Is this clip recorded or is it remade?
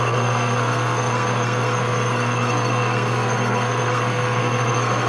remade